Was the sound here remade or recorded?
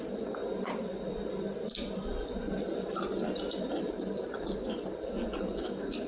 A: recorded